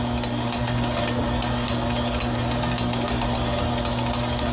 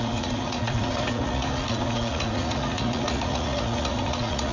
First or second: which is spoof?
second